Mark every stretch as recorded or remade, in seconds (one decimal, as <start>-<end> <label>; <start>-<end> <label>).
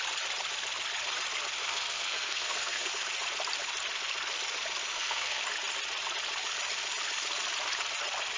0.0-1.6 recorded; 1.6-2.9 remade; 2.9-4.9 recorded; 4.9-5.4 remade; 5.4-8.4 recorded